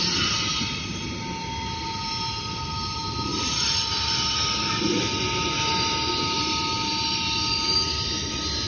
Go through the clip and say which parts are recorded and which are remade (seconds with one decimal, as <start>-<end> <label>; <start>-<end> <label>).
0.0-8.7 recorded